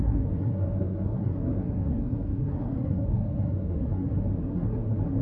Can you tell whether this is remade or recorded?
remade